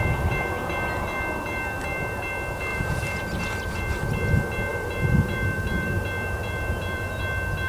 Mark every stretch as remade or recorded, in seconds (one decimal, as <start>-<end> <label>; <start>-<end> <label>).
0.0-2.7 recorded; 2.7-3.4 remade; 3.4-4.7 recorded; 4.7-7.2 remade; 7.2-7.7 recorded